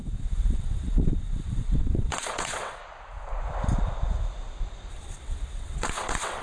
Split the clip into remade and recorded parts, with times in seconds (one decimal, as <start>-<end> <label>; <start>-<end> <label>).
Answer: 0.0-2.8 remade; 2.8-4.9 recorded; 4.9-6.4 remade

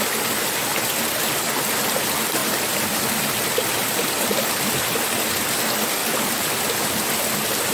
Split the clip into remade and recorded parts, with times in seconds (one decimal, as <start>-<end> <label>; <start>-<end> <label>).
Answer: 0.0-2.4 recorded; 2.4-4.1 remade; 4.1-6.0 recorded; 6.0-6.6 remade; 6.6-7.7 recorded

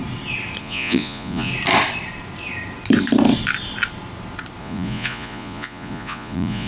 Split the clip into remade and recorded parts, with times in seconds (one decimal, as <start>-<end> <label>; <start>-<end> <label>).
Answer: 0.0-0.6 recorded; 0.6-1.5 remade; 1.5-4.6 recorded; 4.6-6.7 remade

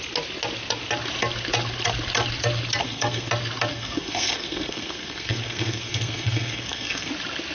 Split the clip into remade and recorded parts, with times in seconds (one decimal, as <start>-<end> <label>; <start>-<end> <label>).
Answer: 0.0-2.8 recorded; 2.8-3.3 remade; 3.3-3.7 recorded; 3.7-7.1 remade; 7.1-7.5 recorded